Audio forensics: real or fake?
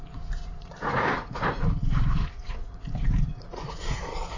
fake